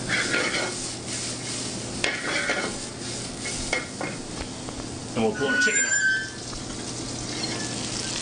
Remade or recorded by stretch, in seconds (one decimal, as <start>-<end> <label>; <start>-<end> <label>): 0.0-8.2 recorded